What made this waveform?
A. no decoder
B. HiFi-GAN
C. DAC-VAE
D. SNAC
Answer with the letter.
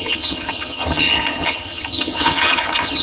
B